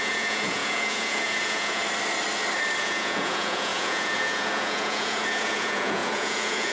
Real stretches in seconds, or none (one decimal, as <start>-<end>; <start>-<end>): 1.8-2.8